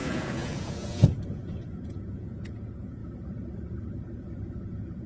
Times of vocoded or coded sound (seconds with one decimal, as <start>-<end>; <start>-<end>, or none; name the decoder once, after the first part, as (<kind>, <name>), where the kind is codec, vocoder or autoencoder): 0.0-3.0 (vocoder, Vocos); 4.6-5.1